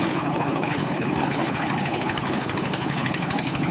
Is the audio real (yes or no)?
no